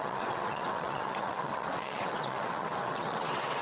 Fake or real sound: fake